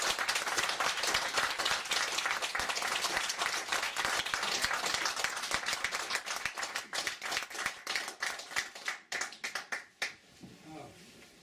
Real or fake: real